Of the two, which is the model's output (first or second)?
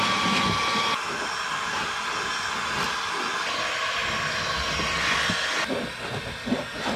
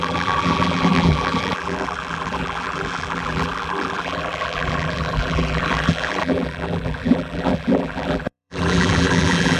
second